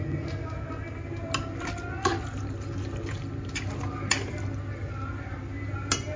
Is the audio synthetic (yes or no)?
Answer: no